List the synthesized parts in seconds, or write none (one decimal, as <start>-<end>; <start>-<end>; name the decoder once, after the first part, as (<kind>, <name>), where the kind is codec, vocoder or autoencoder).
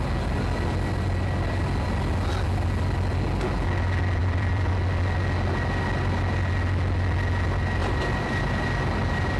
4.2-4.7 (vocoder, BigVGAN v2); 7.8-8.4